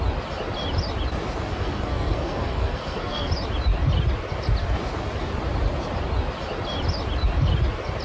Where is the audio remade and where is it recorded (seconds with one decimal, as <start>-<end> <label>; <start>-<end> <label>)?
0.0-1.5 recorded; 1.5-3.3 remade; 3.3-8.0 recorded